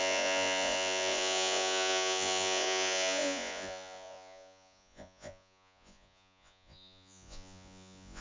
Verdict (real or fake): fake